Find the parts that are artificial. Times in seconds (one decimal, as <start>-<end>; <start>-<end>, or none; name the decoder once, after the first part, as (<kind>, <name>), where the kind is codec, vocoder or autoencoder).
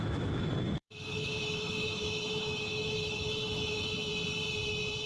0.0-4.1 (autoencoder, DAC-VAE)